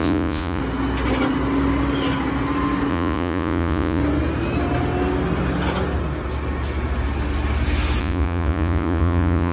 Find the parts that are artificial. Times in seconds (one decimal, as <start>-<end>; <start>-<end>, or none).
0.0-0.6; 2.9-4.0; 8.0-9.5